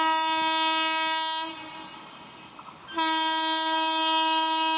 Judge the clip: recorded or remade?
recorded